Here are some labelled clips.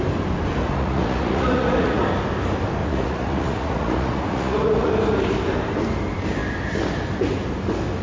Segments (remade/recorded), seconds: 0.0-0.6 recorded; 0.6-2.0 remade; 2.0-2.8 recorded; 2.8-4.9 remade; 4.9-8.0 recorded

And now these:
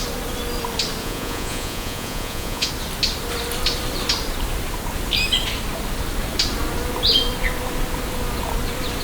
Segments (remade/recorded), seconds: 0.0-1.0 recorded; 1.0-2.7 remade; 2.7-9.0 recorded

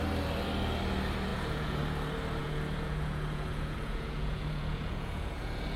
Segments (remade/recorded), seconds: 0.0-1.3 recorded; 1.3-1.8 remade; 1.8-2.4 recorded; 2.4-5.8 remade

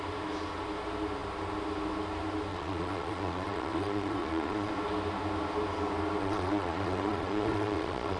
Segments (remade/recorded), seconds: 0.0-2.5 recorded; 2.5-4.7 remade; 4.7-6.2 recorded; 6.2-8.2 remade

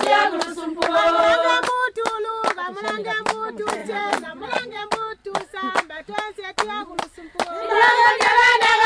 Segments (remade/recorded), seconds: 0.0-3.8 recorded; 3.8-4.8 remade; 4.8-8.9 recorded

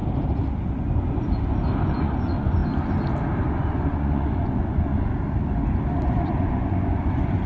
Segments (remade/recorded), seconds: 0.0-1.9 recorded; 1.9-2.6 remade; 2.6-3.4 recorded; 3.4-5.1 remade; 5.1-5.9 recorded; 5.9-7.5 remade

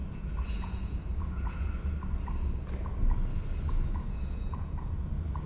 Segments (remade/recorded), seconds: 0.0-1.7 remade; 1.7-3.9 recorded; 3.9-5.1 remade; 5.1-5.5 recorded

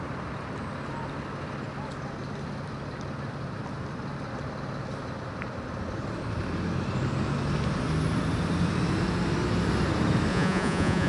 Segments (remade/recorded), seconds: 0.0-10.3 recorded; 10.3-11.1 remade